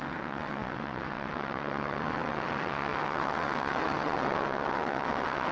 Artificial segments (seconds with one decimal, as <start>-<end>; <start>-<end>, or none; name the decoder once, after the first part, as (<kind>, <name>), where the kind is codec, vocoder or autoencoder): 0.0-5.5 (vocoder, WaveNeXt)